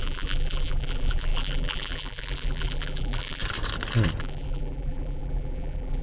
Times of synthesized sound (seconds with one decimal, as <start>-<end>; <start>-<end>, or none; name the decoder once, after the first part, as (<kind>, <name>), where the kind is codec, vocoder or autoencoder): 0.0-3.4 (vocoder, BigVGAN v2); 4.2-6.0